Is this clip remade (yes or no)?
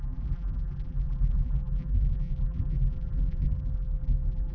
yes